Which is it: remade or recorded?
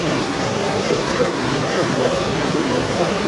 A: remade